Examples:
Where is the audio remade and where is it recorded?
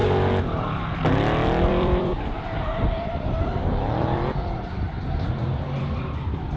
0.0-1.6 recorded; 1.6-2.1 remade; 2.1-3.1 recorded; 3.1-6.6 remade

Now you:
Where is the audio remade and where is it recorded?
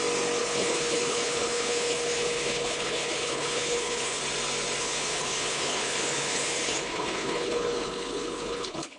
0.0-0.4 recorded; 0.4-4.2 remade; 4.2-4.8 recorded; 4.8-9.0 remade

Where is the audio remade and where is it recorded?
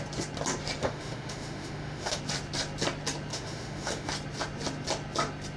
0.0-0.8 recorded; 0.8-2.2 remade; 2.2-3.3 recorded; 3.3-4.1 remade; 4.1-5.6 recorded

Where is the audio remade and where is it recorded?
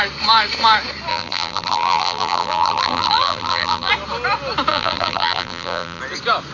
0.0-1.1 recorded; 1.1-3.9 remade; 3.9-4.7 recorded; 4.7-6.0 remade; 6.0-6.5 recorded